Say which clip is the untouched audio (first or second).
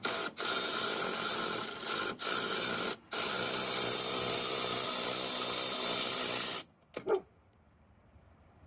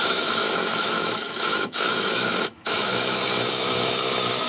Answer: first